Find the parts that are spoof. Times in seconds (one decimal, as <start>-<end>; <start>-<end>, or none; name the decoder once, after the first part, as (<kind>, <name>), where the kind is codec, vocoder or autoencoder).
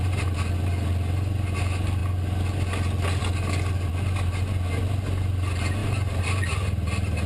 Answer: none